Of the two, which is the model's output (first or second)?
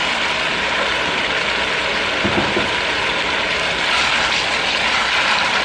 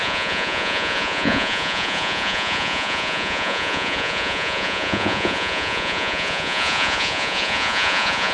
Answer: second